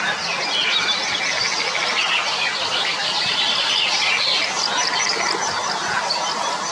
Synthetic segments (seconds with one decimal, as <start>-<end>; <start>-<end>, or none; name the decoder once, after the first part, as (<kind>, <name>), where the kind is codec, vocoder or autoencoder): none